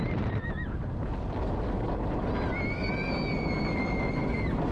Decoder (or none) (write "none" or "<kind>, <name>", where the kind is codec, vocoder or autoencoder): none